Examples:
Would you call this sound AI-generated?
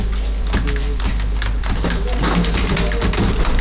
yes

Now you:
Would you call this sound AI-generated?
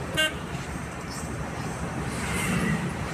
yes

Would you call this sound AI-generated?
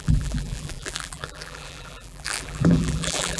yes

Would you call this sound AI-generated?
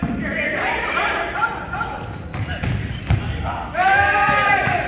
yes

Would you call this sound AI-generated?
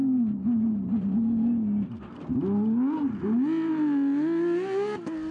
no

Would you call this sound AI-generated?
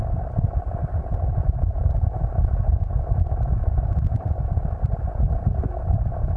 no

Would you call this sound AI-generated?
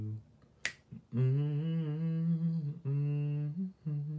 no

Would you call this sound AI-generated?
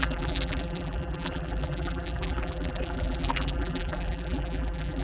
yes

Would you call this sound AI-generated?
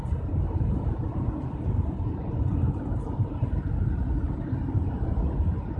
no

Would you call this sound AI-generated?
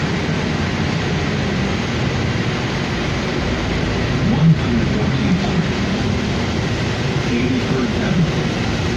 yes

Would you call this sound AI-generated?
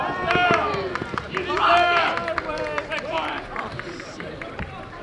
yes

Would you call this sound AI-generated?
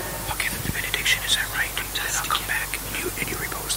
no